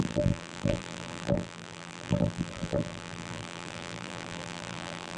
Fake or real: fake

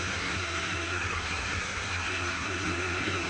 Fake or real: fake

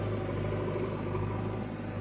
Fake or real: real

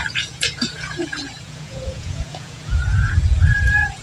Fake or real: fake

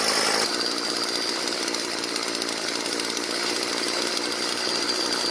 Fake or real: real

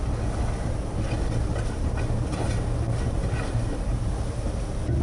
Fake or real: real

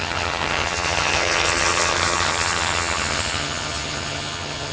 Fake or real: fake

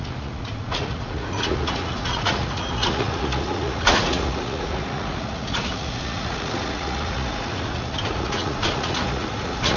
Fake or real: fake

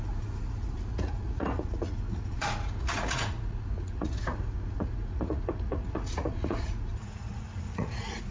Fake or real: fake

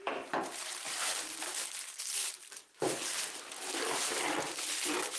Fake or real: fake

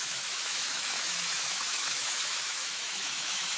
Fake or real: fake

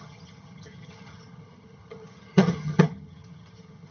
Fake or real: fake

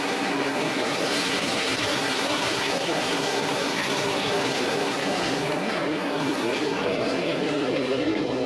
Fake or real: fake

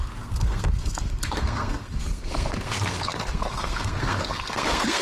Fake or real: fake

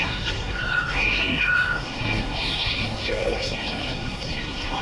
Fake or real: fake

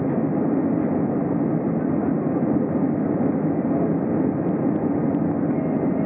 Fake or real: real